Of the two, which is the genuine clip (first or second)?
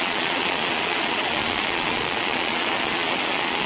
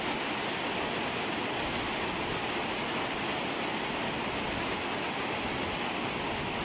second